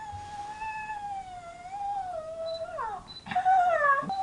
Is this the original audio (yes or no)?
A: yes